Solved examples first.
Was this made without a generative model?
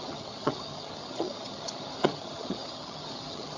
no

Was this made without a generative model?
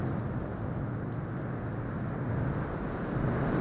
yes